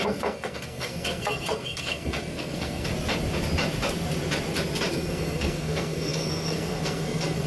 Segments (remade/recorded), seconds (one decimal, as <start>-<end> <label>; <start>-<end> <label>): 0.0-2.9 remade; 2.9-4.9 recorded; 4.9-7.5 remade